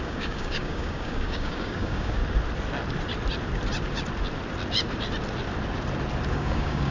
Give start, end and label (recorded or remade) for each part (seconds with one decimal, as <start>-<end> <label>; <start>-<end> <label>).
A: 0.0-2.2 remade; 2.2-6.3 recorded; 6.3-6.9 remade